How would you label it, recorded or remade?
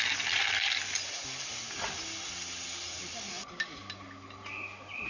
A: recorded